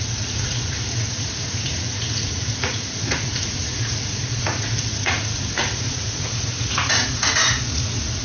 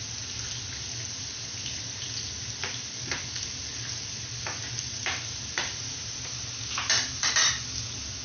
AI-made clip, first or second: first